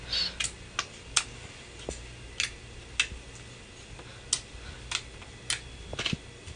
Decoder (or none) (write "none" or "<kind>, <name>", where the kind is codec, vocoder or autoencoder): none